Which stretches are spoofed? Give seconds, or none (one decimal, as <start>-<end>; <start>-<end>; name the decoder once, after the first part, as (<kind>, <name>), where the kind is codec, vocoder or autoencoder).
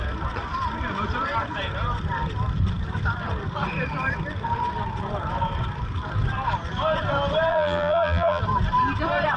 7.5-8.4 (vocoder, BigVGAN v2)